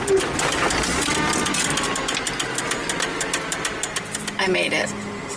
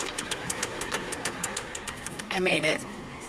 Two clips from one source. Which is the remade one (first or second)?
second